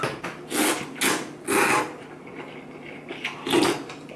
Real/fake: real